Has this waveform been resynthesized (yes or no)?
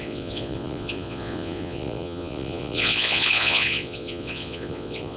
yes